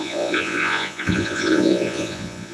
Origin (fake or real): fake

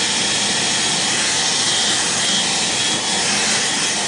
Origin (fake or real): real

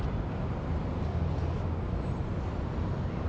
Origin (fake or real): real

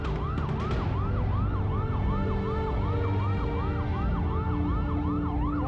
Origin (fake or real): real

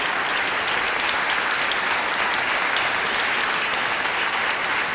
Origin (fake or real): real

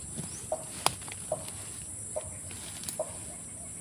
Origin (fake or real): real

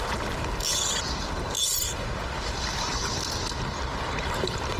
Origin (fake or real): real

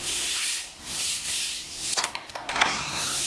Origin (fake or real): fake